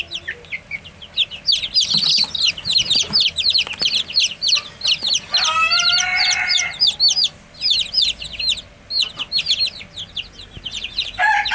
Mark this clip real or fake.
real